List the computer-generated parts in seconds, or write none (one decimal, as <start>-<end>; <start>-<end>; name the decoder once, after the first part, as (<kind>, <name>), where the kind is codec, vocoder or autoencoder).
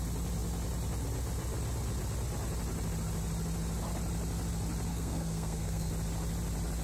4.9-5.9 (codec, SNAC)